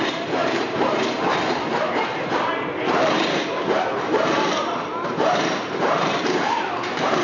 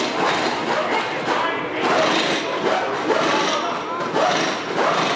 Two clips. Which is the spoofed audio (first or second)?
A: first